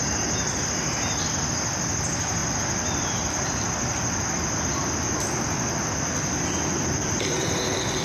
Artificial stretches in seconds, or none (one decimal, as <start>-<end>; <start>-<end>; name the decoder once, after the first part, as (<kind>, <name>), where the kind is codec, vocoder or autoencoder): none